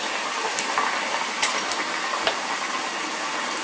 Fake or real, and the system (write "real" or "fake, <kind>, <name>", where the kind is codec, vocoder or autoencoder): real